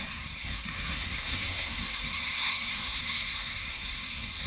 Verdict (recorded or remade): remade